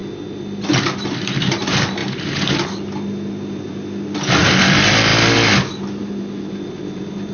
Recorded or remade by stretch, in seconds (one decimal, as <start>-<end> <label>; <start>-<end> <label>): 0.0-7.3 recorded